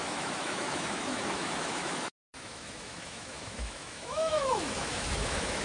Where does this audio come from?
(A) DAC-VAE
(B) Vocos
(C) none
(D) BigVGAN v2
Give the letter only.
A